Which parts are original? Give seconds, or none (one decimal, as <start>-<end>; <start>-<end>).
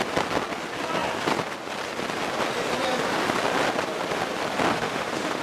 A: 0.0-4.7